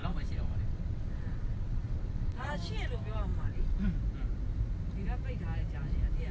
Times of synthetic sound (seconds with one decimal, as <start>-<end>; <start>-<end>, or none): 0.0-2.5; 3.3-3.8